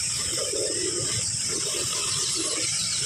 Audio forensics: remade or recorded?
remade